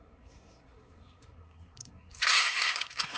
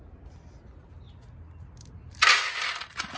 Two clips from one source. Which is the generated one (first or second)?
first